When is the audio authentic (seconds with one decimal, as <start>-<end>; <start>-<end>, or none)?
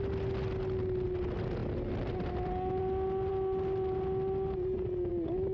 0.0-5.5